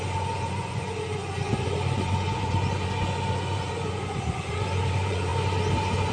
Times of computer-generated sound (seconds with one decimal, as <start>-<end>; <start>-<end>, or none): 0.0-5.3